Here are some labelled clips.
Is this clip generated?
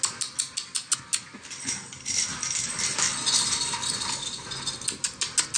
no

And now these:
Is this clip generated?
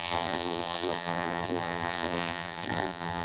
yes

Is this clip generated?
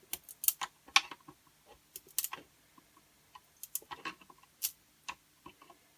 no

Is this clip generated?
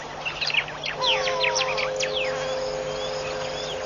no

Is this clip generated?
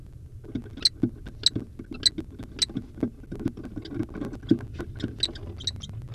no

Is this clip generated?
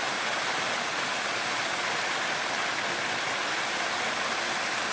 no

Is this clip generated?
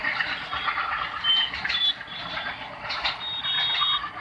no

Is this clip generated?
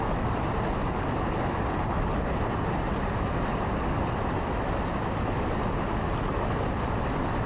no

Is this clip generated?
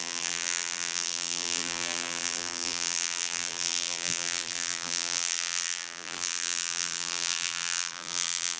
yes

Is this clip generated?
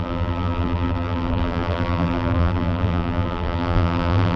yes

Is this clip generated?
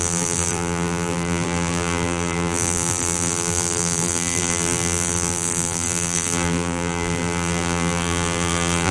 yes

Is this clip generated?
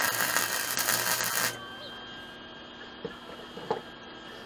no